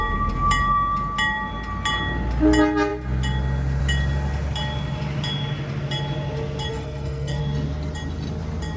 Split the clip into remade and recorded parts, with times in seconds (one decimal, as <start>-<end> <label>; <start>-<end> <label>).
0.0-6.7 recorded; 6.7-7.4 remade; 7.4-8.8 recorded